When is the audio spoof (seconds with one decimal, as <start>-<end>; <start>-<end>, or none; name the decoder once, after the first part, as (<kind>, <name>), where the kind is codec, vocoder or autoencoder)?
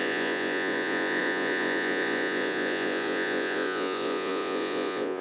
0.0-5.2 (vocoder, Vocos)